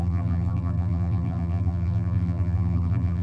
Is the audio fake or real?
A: fake